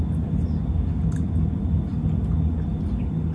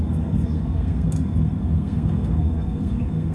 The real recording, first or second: first